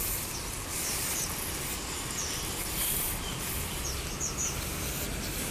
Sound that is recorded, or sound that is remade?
recorded